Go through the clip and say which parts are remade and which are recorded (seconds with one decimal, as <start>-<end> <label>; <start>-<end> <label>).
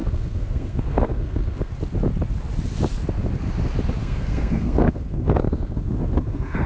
0.0-1.7 remade; 1.7-4.0 recorded; 4.0-6.7 remade